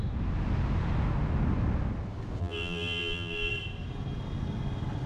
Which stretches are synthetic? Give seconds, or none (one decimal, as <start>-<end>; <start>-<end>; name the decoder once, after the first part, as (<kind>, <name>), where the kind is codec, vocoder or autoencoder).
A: 2.4-3.5 (vocoder, BigVGAN v2)